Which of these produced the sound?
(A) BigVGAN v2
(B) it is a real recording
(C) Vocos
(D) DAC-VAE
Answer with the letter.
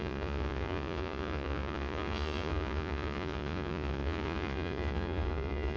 C